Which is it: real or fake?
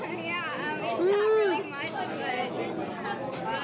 real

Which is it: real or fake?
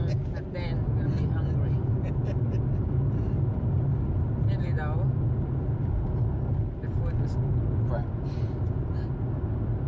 real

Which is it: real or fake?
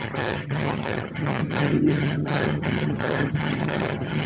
fake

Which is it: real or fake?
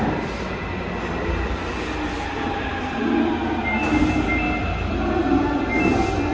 real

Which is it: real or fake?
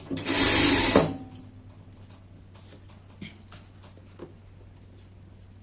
real